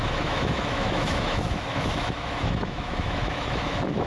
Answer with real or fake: fake